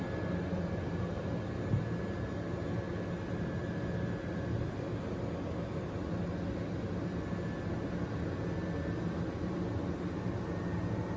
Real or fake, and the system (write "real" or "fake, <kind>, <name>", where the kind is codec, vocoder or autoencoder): real